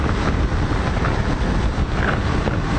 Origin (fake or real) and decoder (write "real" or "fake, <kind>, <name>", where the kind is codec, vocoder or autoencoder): fake, vocoder, BigVGAN v2